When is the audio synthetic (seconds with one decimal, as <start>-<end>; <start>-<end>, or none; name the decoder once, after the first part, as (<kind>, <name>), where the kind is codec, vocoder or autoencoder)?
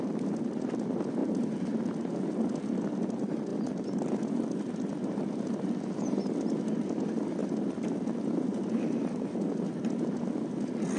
none